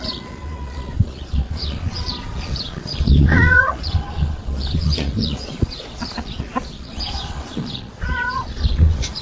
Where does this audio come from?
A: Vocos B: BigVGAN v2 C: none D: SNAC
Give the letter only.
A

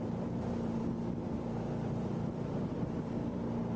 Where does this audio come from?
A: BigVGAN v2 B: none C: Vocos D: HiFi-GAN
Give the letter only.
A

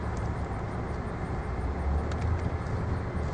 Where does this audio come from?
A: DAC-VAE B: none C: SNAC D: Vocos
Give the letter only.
B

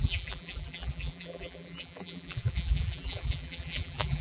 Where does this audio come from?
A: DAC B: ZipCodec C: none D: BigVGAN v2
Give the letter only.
D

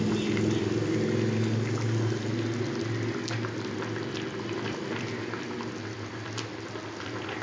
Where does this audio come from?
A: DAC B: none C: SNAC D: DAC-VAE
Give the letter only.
B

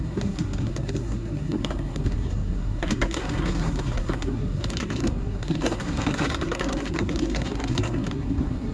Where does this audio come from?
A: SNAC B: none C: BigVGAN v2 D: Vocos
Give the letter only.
A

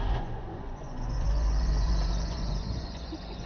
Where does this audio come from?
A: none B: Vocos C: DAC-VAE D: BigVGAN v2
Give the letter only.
B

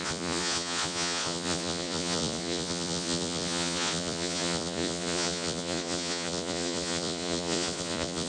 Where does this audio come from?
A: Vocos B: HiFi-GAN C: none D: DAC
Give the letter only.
A